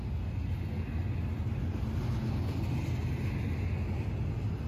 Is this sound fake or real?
real